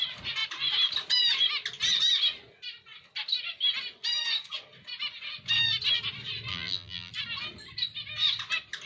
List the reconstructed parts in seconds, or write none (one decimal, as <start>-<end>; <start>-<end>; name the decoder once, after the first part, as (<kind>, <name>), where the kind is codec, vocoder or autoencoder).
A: 6.5-7.1 (vocoder, BigVGAN v2)